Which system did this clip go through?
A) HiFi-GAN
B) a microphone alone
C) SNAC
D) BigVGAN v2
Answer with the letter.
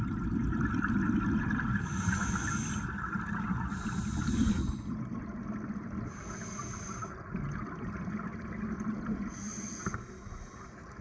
B